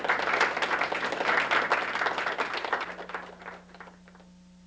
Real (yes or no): yes